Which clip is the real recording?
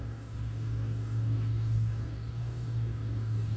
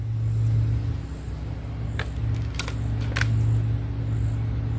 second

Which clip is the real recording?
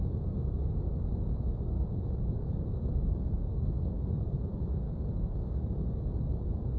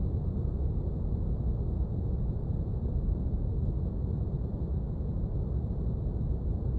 second